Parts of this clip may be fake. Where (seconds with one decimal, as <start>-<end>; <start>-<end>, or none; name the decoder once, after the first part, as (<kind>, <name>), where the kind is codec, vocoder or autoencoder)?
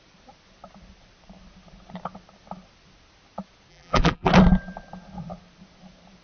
3.7-4.3 (vocoder, BigVGAN v2)